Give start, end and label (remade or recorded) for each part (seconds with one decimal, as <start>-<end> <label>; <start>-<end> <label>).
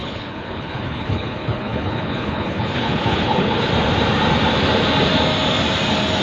0.0-3.7 remade; 3.7-6.2 recorded